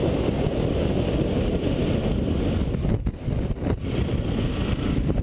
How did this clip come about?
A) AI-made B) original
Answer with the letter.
B